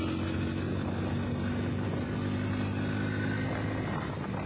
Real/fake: real